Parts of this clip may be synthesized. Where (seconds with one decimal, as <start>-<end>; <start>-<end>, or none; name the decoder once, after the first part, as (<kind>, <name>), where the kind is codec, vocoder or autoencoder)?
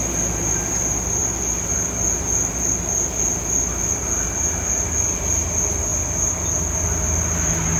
none